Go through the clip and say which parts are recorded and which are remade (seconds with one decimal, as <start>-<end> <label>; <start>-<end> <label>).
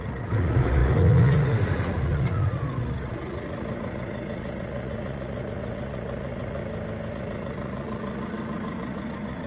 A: 0.0-6.6 remade; 6.6-7.1 recorded; 7.1-9.5 remade